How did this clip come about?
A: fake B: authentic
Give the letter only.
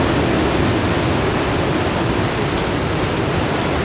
B